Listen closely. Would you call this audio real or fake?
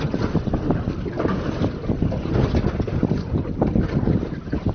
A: real